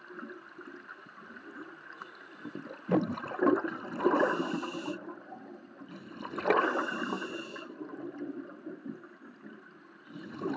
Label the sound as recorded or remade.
recorded